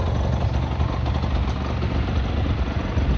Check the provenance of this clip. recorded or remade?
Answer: recorded